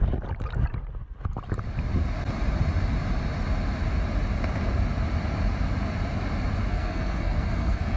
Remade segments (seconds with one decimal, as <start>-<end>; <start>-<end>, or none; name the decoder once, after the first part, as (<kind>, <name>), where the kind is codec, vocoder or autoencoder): 6.7-8.0 (codec, SNAC)